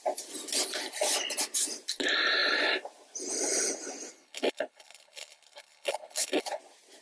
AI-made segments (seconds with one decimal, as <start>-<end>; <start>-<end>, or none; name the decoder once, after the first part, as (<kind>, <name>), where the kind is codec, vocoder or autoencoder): 4.1-6.6 (codec, HILCodec)